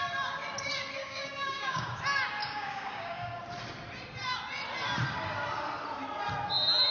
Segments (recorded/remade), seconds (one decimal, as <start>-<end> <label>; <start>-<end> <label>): 0.0-1.0 recorded; 1.0-2.0 remade; 2.0-2.4 recorded; 2.4-3.4 remade; 3.4-6.9 recorded